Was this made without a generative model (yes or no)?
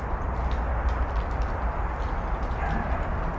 yes